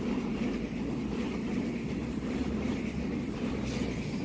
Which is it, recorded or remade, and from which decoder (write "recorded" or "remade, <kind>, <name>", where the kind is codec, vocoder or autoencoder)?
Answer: recorded